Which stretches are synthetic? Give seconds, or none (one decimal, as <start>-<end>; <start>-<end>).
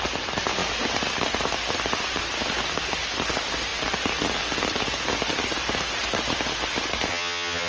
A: 7.1-7.7